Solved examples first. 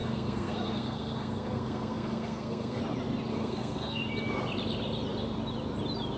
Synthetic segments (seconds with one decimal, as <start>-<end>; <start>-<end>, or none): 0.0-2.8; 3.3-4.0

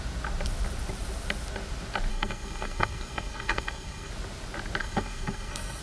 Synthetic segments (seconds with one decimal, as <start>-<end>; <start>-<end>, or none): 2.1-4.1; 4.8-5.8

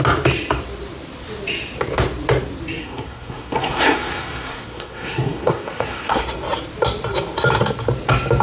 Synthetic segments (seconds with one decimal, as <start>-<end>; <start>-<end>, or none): 2.8-6.2